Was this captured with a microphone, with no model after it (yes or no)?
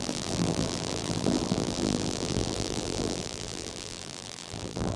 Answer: no